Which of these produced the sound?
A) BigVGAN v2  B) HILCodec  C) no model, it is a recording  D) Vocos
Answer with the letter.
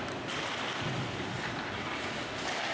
C